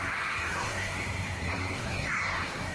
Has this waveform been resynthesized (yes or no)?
yes